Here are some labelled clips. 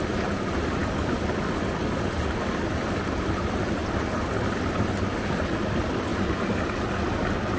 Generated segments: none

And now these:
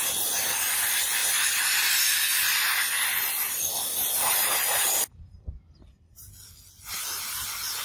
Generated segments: none

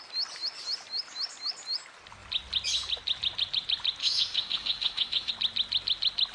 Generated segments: 4.0-5.3 (autoencoder, DAC-VAE)